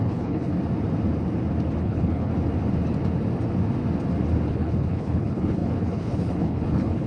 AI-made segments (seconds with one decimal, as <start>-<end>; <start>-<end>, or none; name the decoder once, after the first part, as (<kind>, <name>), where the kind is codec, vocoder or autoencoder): 0.0-0.5 (codec, HILCodec); 1.8-2.3; 4.5-7.1